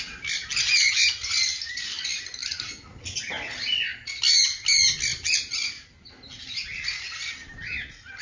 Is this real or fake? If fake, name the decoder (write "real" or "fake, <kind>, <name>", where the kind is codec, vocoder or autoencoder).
real